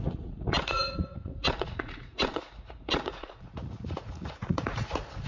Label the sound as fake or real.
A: fake